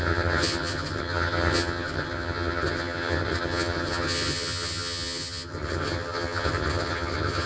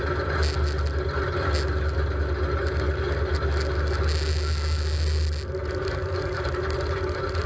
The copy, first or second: first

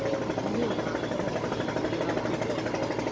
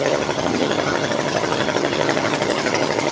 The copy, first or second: second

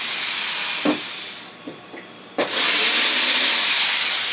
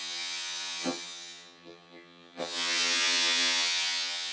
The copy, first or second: second